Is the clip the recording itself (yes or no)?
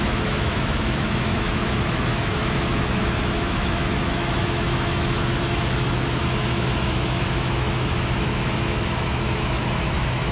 no